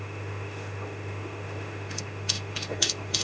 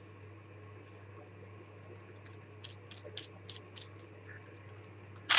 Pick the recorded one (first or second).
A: second